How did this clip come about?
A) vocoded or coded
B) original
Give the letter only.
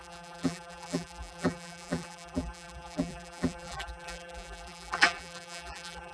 A